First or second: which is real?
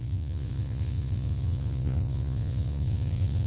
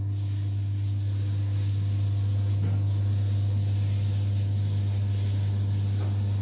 second